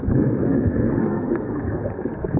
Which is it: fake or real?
fake